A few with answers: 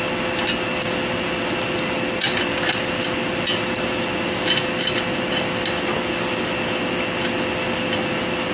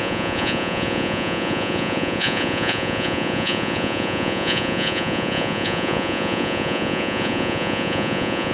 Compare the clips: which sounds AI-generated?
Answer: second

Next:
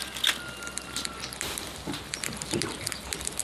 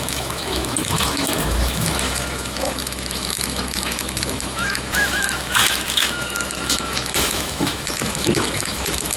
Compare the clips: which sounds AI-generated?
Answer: second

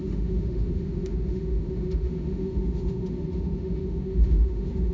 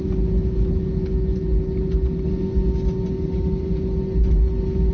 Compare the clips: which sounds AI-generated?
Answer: first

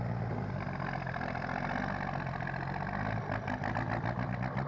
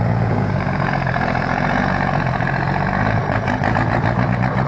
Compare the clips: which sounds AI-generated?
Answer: second